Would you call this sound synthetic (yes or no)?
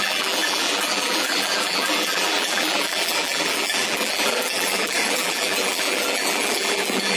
yes